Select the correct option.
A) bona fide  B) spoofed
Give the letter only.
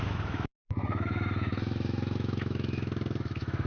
B